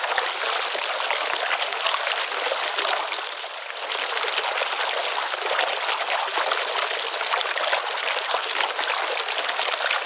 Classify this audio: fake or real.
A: real